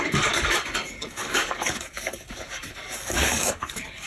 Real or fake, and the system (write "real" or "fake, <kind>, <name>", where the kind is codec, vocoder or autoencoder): fake, codec, DAC